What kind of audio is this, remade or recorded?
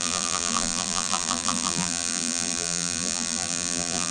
remade